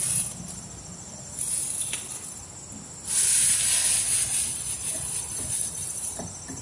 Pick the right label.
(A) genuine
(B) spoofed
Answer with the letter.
A